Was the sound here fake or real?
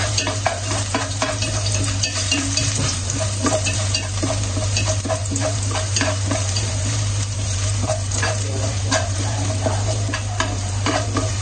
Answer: fake